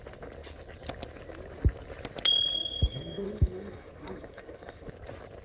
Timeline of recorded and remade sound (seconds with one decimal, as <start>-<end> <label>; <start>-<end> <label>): 0.0-2.5 recorded; 2.5-4.9 remade; 4.9-5.4 recorded

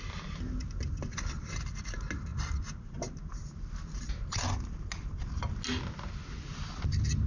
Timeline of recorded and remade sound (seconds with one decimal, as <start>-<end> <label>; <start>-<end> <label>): 0.0-7.3 recorded